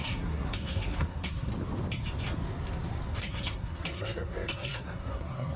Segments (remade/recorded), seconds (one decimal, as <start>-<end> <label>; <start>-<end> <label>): 0.0-1.5 remade; 1.5-3.2 recorded; 3.2-5.6 remade